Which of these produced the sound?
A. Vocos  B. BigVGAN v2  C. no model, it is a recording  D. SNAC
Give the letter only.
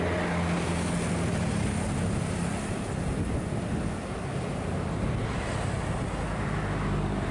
C